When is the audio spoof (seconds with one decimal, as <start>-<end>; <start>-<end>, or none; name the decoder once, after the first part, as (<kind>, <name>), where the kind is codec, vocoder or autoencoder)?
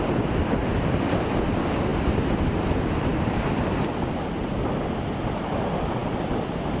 none